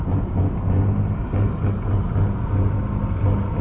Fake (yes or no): no